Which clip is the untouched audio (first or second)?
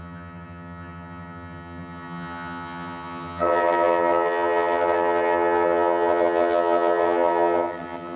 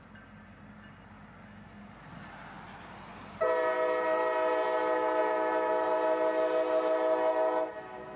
second